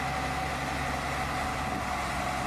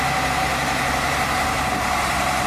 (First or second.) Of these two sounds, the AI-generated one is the second